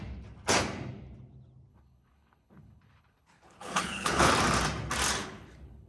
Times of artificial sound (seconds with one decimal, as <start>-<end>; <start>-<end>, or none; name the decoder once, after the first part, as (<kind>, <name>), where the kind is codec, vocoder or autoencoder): 1.7-4.3 (codec, HILCodec); 5.2-5.9